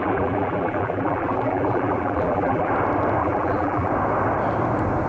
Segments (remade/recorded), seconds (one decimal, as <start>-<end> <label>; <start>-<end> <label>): 0.0-2.7 remade; 2.7-3.2 recorded; 3.2-3.9 remade; 3.9-5.1 recorded